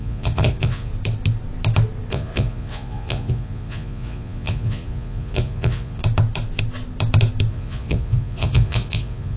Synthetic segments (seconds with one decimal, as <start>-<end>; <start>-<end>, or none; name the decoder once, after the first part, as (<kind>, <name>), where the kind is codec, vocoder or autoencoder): 0.0-0.9 (vocoder, Vocos); 2.1-6.0; 7.5-9.4